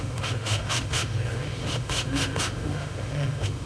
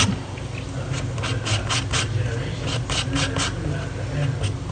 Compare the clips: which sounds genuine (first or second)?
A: second